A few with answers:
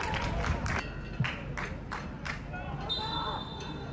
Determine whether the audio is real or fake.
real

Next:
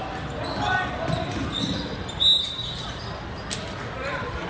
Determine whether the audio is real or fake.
real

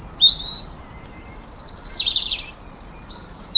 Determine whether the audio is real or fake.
fake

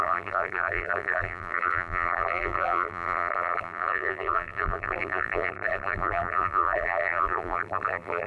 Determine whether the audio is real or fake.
fake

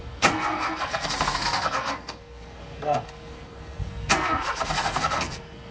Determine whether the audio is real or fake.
fake